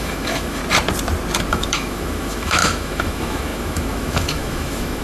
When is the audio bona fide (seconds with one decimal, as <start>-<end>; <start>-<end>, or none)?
0.6-1.5